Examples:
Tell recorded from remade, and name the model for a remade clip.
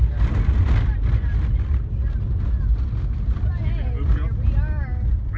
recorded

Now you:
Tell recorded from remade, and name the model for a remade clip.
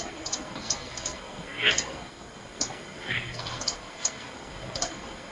remade, codec, SNAC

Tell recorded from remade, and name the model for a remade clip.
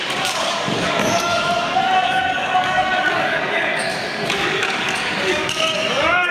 remade, codec, DAC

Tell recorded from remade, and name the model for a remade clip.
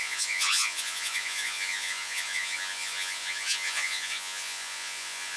remade, vocoder, Vocos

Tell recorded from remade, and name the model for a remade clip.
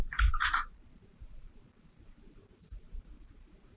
remade, vocoder, BigVGAN v2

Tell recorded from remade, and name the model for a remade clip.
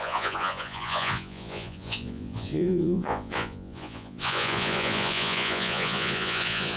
remade, vocoder, Vocos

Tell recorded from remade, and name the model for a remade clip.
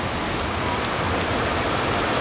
recorded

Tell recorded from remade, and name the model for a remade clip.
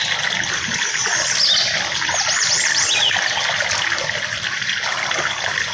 recorded